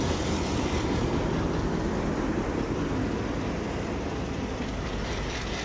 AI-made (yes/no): no